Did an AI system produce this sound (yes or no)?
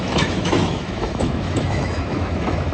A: yes